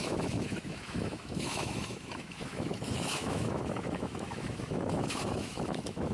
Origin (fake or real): fake